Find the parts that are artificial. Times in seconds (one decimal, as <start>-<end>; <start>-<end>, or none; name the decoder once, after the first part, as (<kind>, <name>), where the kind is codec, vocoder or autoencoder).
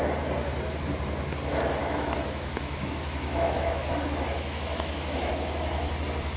1.8-5.3 (autoencoder, DAC-VAE)